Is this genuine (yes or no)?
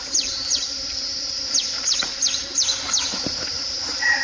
no